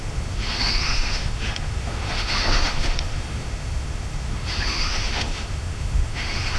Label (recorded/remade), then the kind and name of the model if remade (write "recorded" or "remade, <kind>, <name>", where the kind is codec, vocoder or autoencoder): remade, autoencoder, DAC-VAE